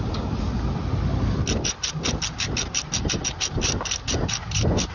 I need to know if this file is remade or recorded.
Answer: recorded